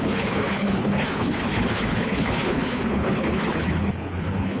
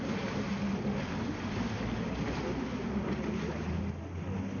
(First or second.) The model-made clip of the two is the first